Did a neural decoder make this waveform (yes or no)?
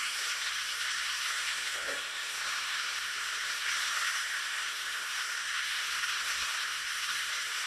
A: yes